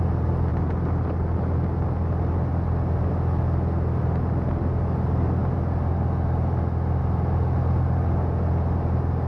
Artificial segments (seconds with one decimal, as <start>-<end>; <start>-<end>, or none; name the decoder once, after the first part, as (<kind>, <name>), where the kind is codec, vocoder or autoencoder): none